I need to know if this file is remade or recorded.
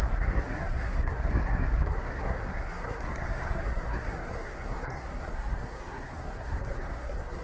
remade